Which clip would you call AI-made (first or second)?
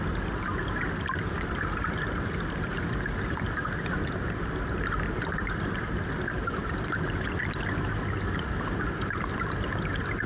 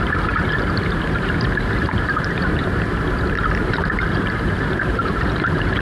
second